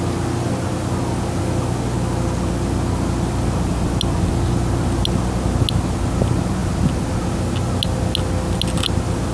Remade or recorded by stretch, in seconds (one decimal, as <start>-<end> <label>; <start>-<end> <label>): 0.0-9.3 recorded